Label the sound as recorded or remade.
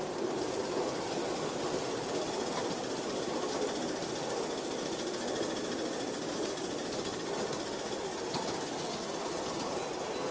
recorded